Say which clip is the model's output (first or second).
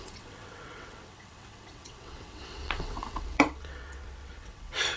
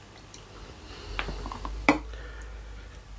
first